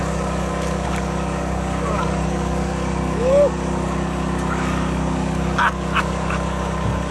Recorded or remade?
remade